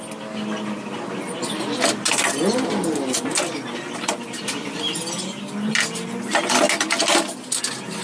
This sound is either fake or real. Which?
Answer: real